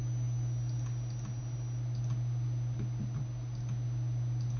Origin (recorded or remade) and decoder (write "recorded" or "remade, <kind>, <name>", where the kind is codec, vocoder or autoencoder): recorded